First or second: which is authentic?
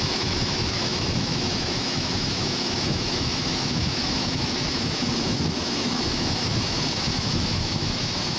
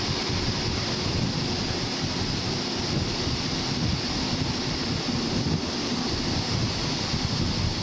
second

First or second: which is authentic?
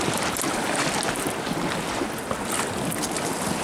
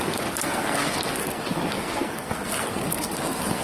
first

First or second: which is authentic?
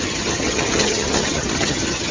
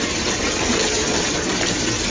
second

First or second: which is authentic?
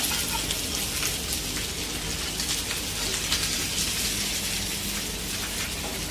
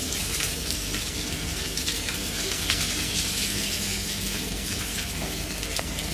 first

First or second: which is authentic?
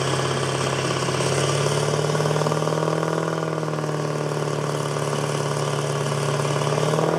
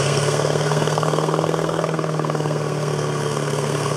first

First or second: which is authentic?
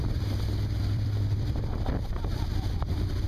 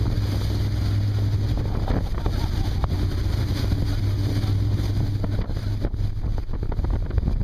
second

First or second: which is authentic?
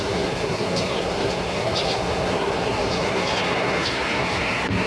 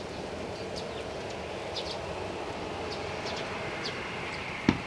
second